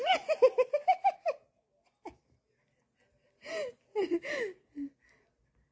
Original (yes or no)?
yes